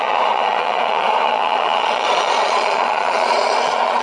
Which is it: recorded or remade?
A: remade